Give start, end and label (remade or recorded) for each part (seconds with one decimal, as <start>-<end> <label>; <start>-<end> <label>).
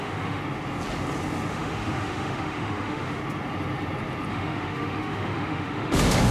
0.0-0.4 remade; 0.4-1.5 recorded; 1.5-3.2 remade; 3.2-4.3 recorded; 4.3-6.3 remade